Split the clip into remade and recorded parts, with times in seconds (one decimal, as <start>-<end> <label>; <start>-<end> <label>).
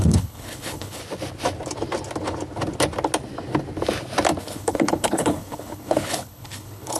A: 0.0-1.0 remade; 1.0-4.4 recorded; 4.4-7.0 remade